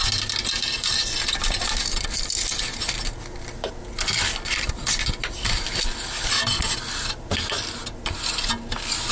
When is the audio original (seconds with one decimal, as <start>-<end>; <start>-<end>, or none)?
0.0-9.1